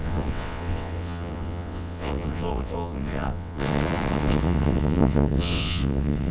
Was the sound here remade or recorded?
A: remade